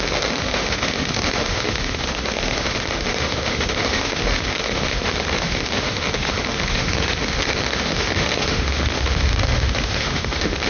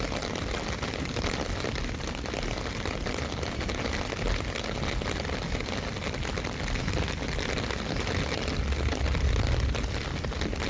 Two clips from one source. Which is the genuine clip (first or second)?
second